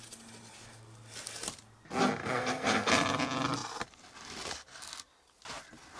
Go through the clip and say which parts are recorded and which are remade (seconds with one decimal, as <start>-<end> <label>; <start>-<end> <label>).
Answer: 0.0-2.2 recorded; 2.2-2.9 remade; 2.9-6.0 recorded